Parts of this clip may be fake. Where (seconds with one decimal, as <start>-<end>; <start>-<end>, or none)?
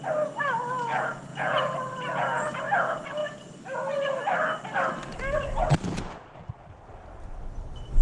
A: 1.3-2.6